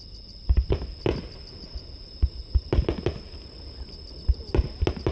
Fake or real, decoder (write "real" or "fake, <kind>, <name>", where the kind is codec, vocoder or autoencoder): real